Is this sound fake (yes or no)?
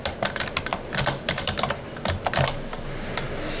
no